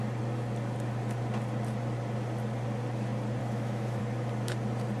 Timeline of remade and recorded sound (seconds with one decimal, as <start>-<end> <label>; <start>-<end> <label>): 0.0-3.4 recorded; 3.4-4.0 remade; 4.0-5.0 recorded

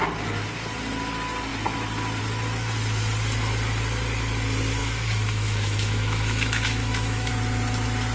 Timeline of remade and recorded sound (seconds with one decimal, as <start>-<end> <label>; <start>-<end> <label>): 0.0-4.8 recorded; 4.8-7.3 remade; 7.3-8.1 recorded

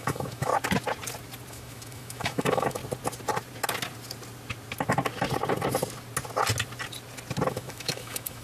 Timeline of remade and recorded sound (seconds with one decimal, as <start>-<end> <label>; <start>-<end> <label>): 0.0-0.5 remade; 0.5-1.5 recorded; 1.5-2.8 remade; 2.8-7.5 recorded; 7.5-8.4 remade

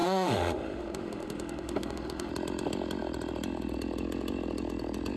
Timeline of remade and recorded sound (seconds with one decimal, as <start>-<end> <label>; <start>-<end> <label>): 0.0-2.3 remade; 2.3-5.2 recorded

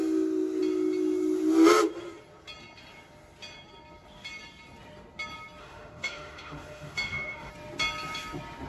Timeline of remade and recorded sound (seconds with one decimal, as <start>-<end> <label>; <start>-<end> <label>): 0.0-5.6 recorded; 5.6-7.5 remade; 7.5-8.7 recorded

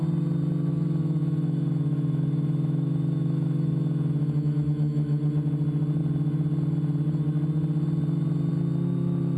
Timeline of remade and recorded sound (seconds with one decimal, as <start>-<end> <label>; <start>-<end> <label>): 0.0-0.7 recorded; 0.7-5.3 remade; 5.3-9.4 recorded

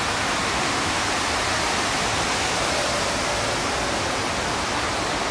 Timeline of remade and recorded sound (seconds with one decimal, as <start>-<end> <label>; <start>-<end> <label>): 0.0-0.5 recorded; 0.5-1.0 remade; 1.0-5.3 recorded

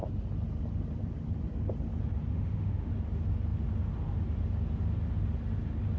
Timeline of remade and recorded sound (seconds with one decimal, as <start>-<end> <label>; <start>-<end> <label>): 0.0-2.3 recorded; 2.3-2.9 remade; 2.9-6.0 recorded